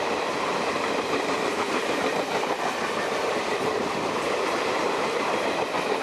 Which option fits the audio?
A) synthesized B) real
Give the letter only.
A